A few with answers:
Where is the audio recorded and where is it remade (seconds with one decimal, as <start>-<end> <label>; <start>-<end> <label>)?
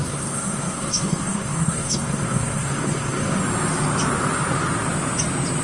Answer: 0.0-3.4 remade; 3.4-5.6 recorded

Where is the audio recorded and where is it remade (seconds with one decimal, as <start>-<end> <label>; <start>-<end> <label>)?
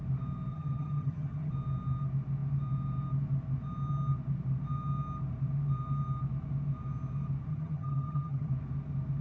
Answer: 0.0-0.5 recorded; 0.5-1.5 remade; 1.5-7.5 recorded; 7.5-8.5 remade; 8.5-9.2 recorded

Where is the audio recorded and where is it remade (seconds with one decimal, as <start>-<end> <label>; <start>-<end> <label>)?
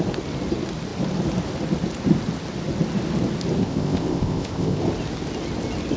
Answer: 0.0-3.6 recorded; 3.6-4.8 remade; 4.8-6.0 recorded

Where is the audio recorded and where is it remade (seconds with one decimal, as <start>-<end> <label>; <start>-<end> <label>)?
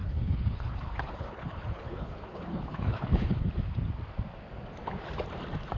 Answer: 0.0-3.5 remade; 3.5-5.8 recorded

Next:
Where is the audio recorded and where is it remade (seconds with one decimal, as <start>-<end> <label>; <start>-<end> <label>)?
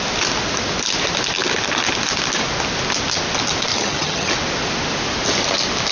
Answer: 0.0-3.7 recorded; 3.7-4.3 remade; 4.3-5.9 recorded